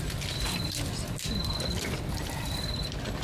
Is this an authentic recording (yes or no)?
yes